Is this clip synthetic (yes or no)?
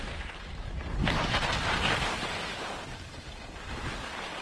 no